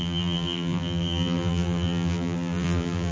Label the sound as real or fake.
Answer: fake